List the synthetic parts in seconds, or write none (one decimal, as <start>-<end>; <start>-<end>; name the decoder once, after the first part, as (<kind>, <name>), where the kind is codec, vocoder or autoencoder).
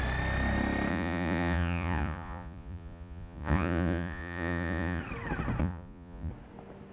0.9-5.0 (vocoder, Vocos); 5.6-6.3